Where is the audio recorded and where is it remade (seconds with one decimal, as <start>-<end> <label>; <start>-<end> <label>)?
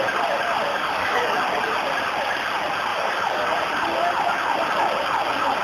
0.0-0.7 recorded; 0.7-1.4 remade; 1.4-2.9 recorded; 2.9-3.4 remade; 3.4-5.6 recorded